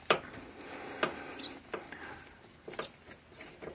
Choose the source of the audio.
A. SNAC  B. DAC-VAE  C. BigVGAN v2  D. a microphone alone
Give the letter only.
D